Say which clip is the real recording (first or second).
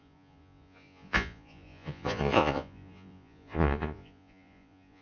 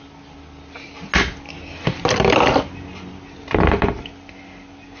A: second